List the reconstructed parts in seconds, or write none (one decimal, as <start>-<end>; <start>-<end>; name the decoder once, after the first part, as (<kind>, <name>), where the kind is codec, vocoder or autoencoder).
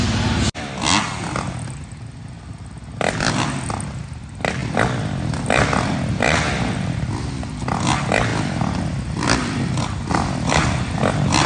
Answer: none